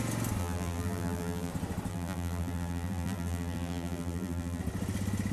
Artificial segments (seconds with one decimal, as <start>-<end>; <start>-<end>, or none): 0.4-1.5; 1.9-4.6